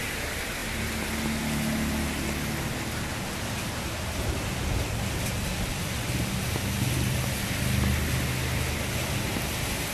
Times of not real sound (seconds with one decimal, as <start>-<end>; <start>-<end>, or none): none